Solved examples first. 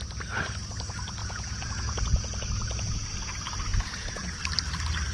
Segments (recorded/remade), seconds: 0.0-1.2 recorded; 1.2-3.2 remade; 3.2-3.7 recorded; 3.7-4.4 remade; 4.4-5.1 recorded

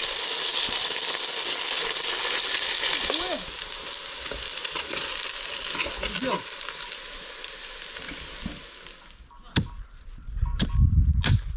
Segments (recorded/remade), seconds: 0.0-4.6 recorded; 4.6-5.1 remade; 5.1-11.6 recorded

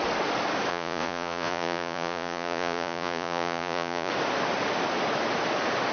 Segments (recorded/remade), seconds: 0.0-0.7 recorded; 0.7-4.1 remade; 4.1-5.9 recorded

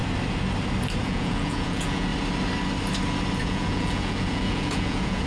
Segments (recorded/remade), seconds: 0.0-1.0 recorded; 1.0-2.1 remade; 2.1-3.4 recorded; 3.4-5.3 remade

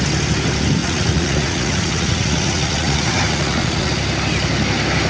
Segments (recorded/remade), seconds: 0.0-0.8 recorded; 0.8-3.9 remade; 3.9-5.1 recorded